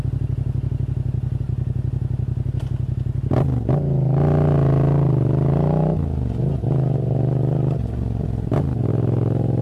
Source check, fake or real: real